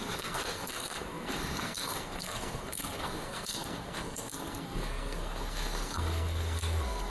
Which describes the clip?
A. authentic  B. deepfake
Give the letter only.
B